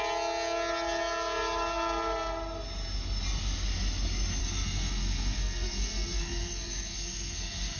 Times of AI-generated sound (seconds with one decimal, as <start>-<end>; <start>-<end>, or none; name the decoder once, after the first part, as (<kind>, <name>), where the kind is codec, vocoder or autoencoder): 4.4-7.8 (codec, SNAC)